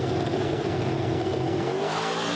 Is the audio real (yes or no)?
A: no